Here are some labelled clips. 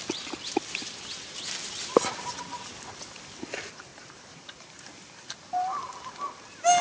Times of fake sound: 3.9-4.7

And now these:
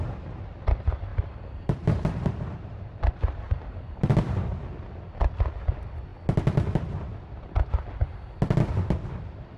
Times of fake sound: 1.1-4.1

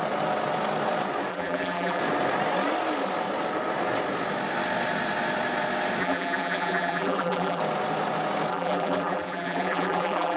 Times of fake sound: 1.3-2.0; 6.0-7.6; 8.5-10.4

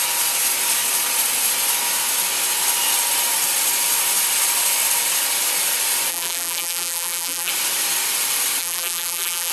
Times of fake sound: 6.1-7.5; 8.6-9.5

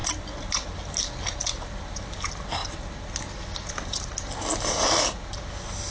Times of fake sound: none

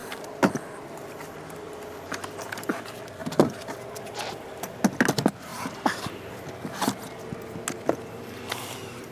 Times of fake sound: 0.0-1.0; 3.2-3.8; 5.5-6.3

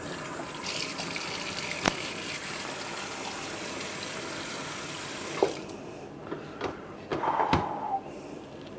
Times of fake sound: 0.0-2.4; 4.2-8.8